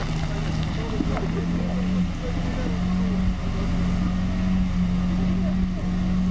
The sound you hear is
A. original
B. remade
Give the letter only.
A